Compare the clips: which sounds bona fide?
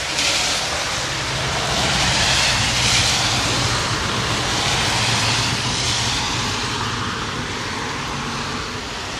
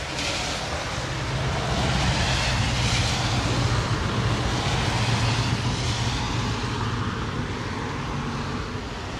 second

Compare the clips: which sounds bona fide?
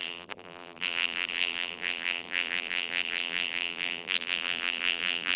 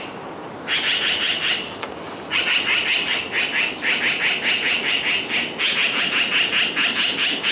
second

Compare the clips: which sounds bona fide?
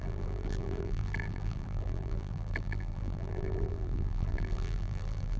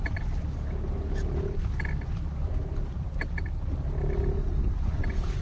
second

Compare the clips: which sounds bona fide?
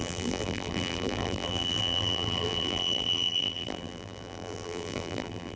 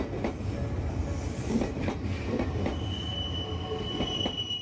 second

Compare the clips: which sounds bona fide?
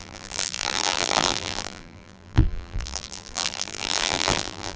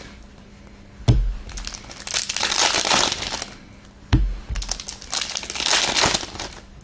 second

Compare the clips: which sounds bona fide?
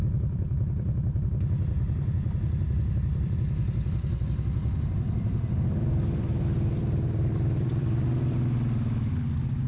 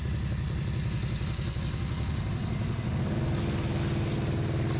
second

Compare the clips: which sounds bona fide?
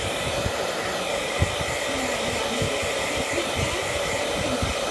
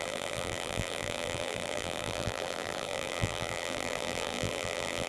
first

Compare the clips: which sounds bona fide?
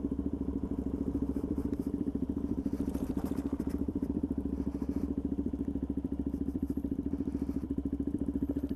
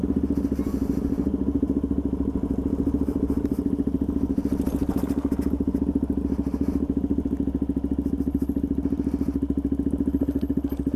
second